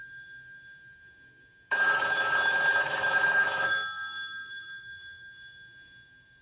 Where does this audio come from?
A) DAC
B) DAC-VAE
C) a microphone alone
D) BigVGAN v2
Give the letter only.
B